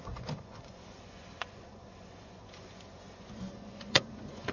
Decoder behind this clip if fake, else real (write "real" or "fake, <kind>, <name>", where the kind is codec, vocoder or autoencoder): fake, vocoder, Vocos